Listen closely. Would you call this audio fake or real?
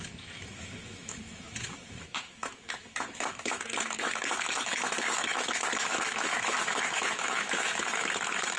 fake